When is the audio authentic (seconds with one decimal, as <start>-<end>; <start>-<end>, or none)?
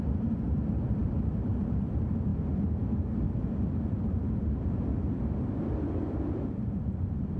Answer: 2.3-3.1